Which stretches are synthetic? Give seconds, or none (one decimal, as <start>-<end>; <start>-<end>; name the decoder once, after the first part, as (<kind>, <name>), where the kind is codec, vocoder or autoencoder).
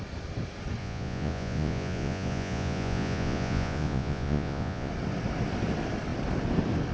0.8-4.9 (vocoder, Vocos)